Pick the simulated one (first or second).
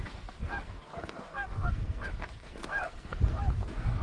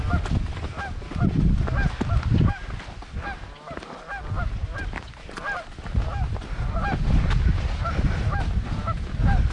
first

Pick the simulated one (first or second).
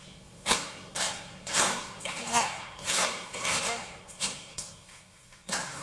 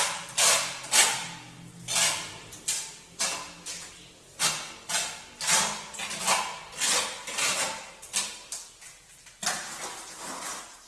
first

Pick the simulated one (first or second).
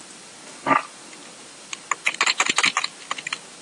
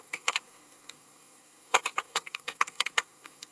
second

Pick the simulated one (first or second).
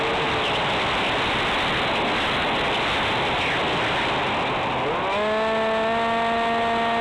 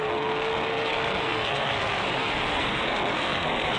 second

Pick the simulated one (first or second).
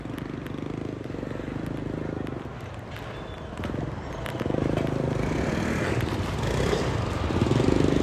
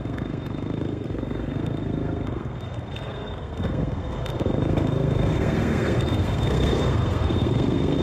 second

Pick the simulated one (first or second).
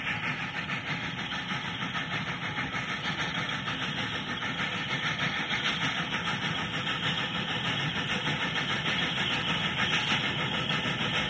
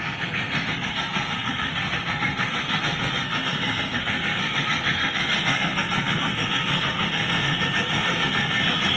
second